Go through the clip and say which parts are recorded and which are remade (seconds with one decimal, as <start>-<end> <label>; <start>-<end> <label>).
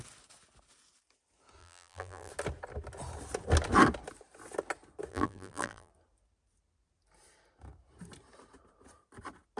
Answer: 0.0-1.6 recorded; 1.6-2.3 remade; 2.3-5.1 recorded; 5.1-5.9 remade; 5.9-9.6 recorded